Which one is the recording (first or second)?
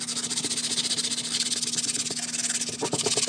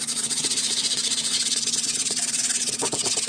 first